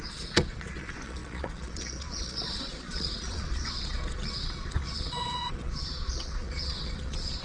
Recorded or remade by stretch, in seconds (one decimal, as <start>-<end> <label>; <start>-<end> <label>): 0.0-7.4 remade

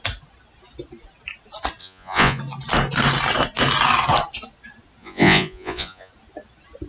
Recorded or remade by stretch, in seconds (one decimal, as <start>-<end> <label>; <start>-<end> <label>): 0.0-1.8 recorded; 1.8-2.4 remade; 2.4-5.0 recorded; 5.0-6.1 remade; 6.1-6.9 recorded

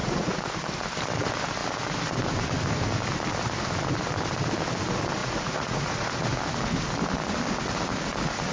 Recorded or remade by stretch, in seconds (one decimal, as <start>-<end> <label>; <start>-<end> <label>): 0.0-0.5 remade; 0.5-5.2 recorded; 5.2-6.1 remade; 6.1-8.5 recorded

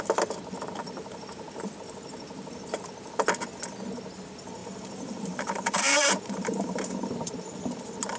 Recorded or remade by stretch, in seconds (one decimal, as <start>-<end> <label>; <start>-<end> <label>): 0.0-0.8 recorded; 0.8-1.7 remade; 1.7-4.6 recorded; 4.6-6.9 remade; 6.9-8.2 recorded

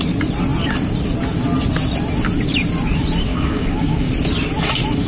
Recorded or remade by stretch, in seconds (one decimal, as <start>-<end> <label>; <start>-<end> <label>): 0.0-3.3 recorded; 3.3-4.1 remade; 4.1-5.1 recorded

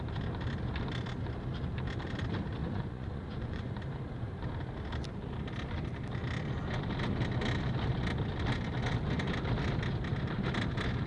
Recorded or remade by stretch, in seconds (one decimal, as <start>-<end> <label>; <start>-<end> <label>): 0.0-2.6 recorded; 2.6-3.7 remade; 3.7-11.1 recorded

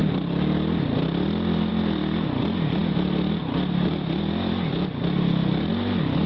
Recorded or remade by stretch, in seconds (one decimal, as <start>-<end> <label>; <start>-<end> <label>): 0.0-6.3 recorded

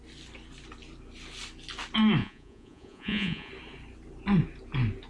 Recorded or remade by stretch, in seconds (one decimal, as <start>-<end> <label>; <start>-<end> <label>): 0.0-2.2 recorded; 2.2-3.5 remade; 3.5-5.1 recorded